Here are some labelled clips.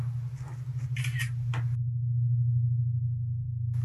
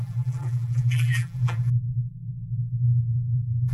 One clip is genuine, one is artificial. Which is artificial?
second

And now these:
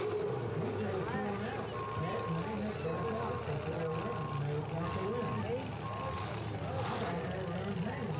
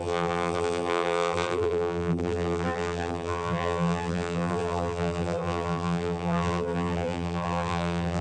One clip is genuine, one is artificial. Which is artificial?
second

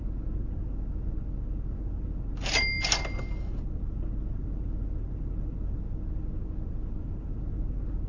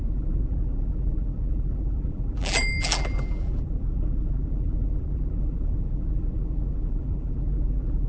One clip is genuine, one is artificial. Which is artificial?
second